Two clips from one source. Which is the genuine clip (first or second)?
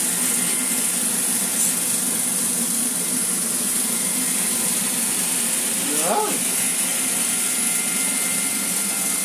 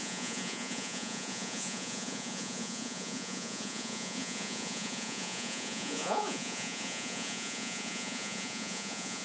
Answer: first